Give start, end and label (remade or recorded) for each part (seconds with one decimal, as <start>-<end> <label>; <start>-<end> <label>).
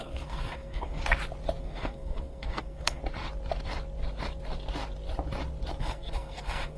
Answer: 0.0-1.0 remade; 1.0-1.6 recorded; 1.6-3.0 remade; 3.0-5.8 recorded; 5.8-6.8 remade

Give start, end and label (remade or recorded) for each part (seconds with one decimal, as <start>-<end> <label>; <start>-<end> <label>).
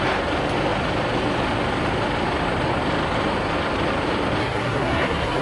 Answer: 0.0-4.4 recorded; 4.4-5.4 remade